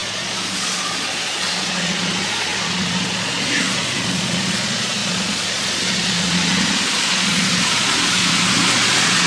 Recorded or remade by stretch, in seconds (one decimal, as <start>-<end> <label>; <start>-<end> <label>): 0.0-9.3 remade